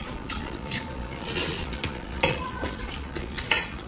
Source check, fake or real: fake